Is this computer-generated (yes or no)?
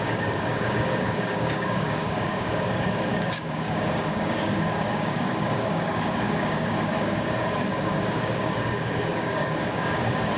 yes